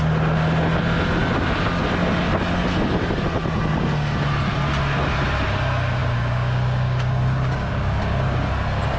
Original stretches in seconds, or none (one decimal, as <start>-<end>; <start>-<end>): 0.0-6.0; 8.5-9.0